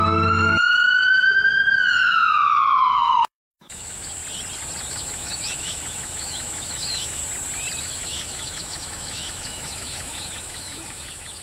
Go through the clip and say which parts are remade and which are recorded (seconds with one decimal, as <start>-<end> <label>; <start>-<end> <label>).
0.0-4.2 remade; 4.2-4.9 recorded; 4.9-7.2 remade; 7.2-7.8 recorded; 7.8-11.4 remade